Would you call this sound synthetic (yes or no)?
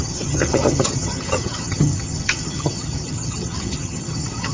yes